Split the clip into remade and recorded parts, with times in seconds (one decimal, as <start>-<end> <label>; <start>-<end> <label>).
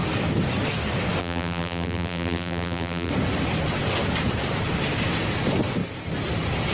0.0-1.2 recorded; 1.2-3.1 remade; 3.1-6.7 recorded